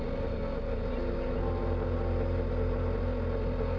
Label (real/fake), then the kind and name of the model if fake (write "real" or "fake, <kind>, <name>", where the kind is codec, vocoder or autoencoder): real